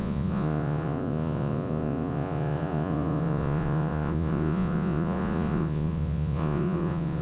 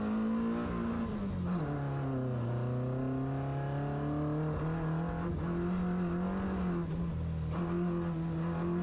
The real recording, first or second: second